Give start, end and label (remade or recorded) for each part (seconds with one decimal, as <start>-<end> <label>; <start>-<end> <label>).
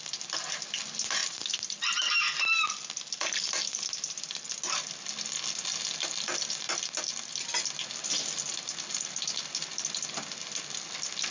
0.0-11.3 recorded